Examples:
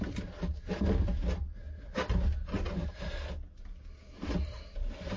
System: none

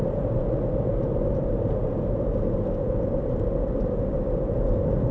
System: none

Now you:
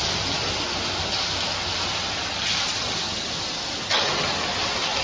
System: none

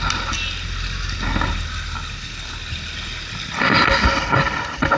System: none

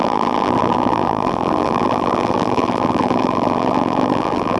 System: vocoder, BigVGAN v2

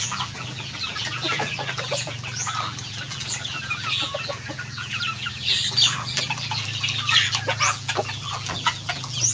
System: vocoder, BigVGAN v2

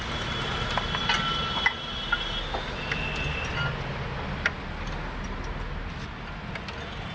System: none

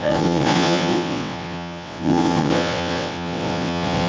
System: vocoder, WaveNeXt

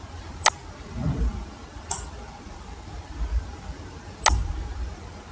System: none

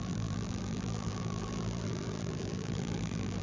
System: vocoder, BigVGAN v2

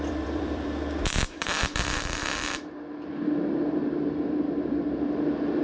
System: vocoder, BigVGAN v2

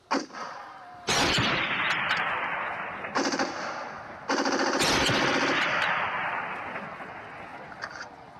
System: none